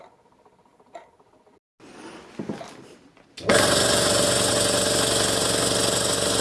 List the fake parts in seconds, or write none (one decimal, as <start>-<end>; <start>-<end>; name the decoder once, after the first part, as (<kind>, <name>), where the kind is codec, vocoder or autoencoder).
none